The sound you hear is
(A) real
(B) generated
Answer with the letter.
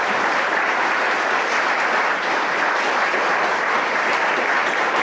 A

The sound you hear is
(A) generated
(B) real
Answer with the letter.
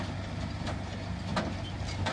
B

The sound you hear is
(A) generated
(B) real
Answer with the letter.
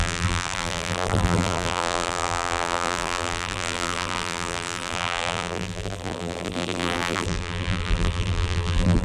A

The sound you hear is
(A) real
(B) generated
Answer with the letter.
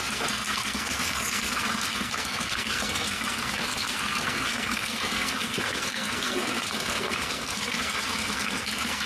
B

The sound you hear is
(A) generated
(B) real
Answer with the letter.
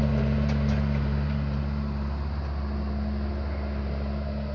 B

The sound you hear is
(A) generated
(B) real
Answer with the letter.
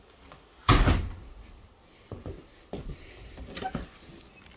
B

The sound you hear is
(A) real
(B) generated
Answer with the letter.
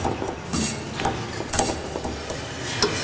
A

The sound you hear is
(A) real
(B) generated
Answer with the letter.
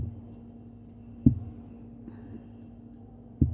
A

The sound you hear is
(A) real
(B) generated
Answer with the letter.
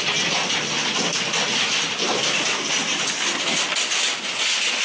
A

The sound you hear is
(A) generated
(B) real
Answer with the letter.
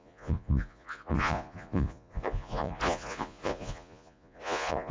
A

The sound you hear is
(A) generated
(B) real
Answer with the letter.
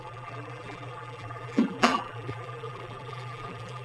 A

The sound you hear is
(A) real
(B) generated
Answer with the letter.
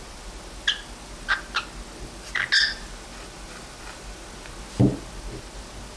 A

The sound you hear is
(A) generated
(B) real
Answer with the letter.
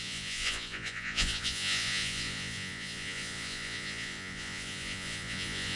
A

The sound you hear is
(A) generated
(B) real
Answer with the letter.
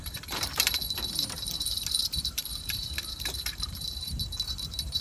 A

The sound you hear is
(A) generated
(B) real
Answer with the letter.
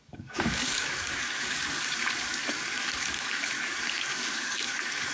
A